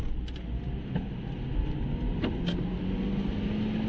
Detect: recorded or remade recorded